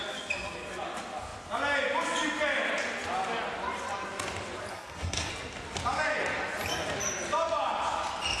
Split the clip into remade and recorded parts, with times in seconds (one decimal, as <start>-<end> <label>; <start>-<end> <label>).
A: 0.0-4.7 recorded; 4.7-5.3 remade; 5.3-8.4 recorded